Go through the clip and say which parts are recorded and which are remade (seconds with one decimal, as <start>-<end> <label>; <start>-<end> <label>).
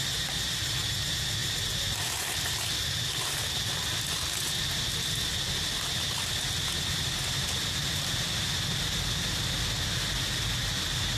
0.0-11.2 recorded